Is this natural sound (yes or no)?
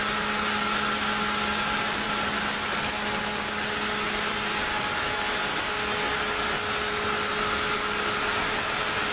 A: yes